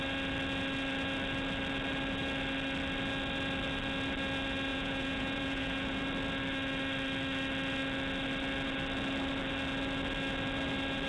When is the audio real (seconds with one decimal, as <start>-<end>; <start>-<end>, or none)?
0.0-4.7; 6.0-11.1